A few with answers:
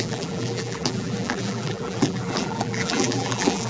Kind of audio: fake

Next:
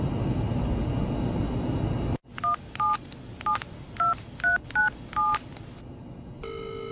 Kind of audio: real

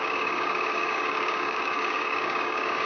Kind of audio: fake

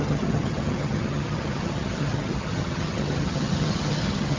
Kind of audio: fake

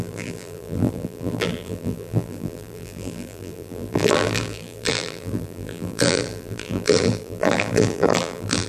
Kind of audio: fake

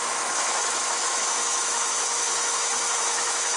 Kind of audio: fake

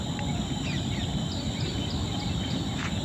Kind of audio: real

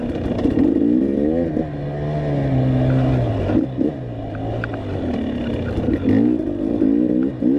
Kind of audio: real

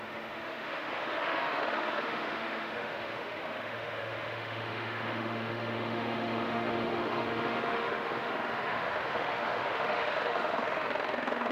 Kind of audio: fake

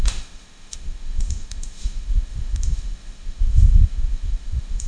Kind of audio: fake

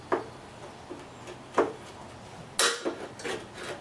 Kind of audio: real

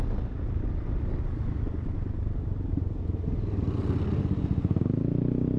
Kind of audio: real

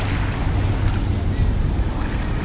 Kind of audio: real